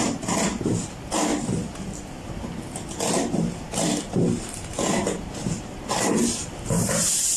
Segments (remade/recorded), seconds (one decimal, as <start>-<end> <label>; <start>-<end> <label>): 0.0-7.4 recorded